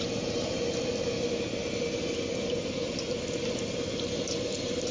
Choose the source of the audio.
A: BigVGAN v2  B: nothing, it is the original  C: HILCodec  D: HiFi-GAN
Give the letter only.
B